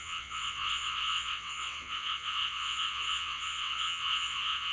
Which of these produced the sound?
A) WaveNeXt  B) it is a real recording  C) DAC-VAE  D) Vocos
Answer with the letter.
A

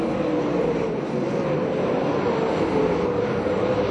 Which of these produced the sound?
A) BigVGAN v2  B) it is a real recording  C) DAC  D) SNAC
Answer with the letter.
B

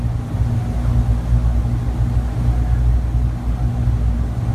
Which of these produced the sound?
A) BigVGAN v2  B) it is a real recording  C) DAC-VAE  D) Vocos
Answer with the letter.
B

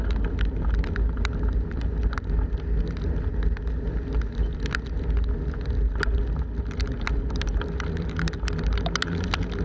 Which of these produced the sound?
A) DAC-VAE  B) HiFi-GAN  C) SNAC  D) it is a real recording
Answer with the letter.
D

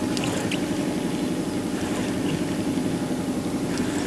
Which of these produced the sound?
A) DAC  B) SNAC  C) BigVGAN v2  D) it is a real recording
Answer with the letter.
D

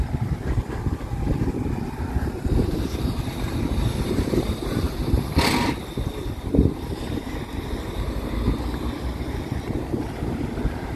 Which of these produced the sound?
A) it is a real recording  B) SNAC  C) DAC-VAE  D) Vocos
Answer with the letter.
A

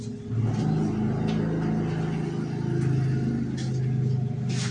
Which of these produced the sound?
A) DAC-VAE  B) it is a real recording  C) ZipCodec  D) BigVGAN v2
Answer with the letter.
B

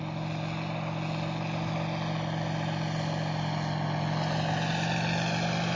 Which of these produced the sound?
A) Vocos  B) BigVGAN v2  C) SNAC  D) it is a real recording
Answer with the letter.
D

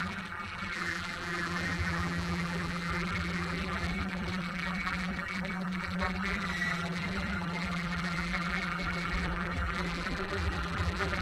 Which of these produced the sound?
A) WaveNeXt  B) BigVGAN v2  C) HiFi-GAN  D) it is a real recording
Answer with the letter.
B